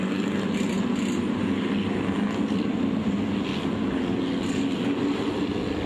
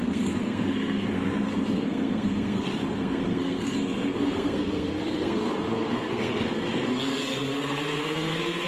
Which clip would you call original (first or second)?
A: first